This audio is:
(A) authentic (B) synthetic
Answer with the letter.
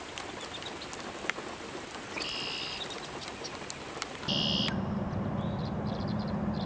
A